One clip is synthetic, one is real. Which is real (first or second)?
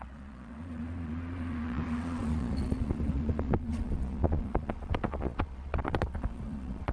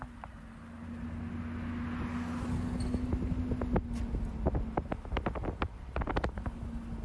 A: second